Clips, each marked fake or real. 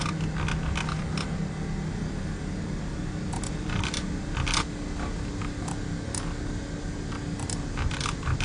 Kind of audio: real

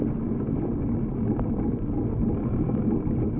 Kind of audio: real